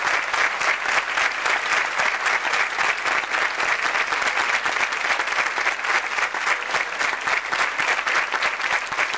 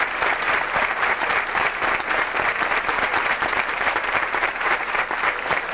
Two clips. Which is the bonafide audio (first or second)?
first